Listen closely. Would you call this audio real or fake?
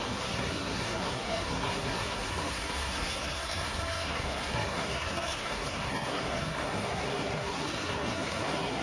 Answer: fake